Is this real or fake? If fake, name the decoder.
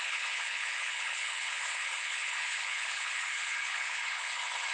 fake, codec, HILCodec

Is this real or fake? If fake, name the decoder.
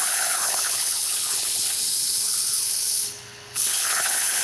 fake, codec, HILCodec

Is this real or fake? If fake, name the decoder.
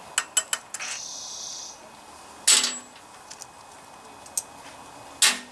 real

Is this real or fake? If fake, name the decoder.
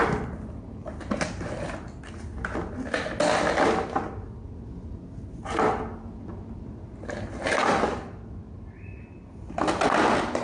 real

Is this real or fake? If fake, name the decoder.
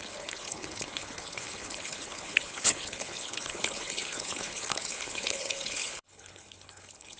fake, codec, HILCodec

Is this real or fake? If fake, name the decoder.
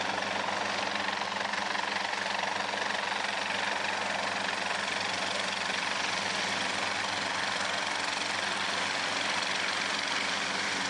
real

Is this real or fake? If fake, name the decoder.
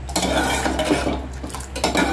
real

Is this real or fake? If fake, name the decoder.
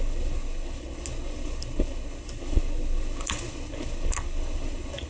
fake, codec, HILCodec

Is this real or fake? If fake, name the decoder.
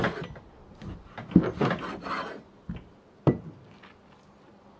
real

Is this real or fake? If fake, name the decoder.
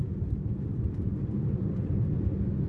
real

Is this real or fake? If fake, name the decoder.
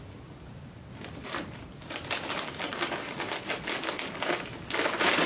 real